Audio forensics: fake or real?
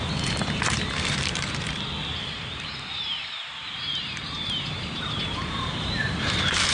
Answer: fake